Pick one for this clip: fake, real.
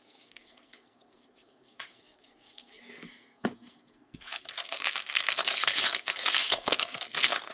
fake